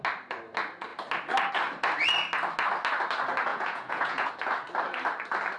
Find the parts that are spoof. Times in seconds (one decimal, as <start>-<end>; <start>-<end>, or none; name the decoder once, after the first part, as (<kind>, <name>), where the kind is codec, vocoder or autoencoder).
3.5-4.3 (vocoder, Vocos)